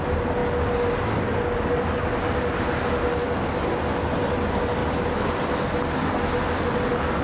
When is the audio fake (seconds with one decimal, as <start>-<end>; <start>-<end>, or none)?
none